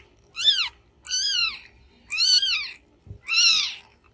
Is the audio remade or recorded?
recorded